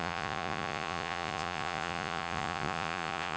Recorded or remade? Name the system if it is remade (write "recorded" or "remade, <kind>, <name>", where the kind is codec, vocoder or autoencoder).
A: remade, vocoder, Vocos